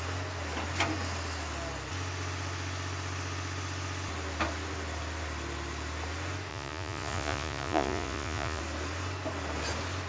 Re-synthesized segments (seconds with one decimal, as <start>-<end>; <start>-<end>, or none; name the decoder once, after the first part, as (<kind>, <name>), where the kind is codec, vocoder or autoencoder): 6.5-8.6 (vocoder, Vocos)